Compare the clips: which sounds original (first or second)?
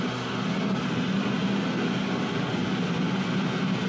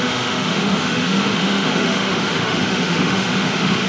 first